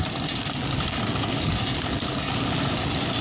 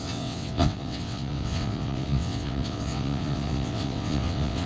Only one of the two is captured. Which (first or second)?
first